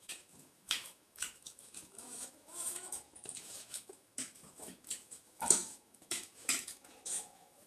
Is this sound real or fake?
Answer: fake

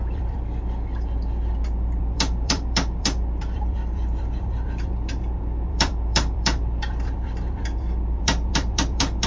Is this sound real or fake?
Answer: fake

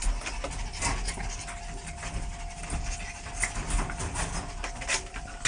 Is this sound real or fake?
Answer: real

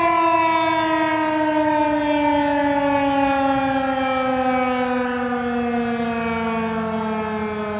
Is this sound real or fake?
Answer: real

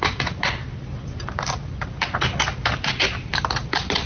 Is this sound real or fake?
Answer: real